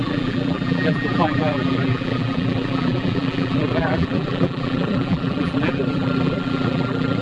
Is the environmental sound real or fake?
fake